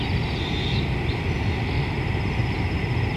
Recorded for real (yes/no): yes